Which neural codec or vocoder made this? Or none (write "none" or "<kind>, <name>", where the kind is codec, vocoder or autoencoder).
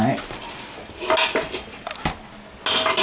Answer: none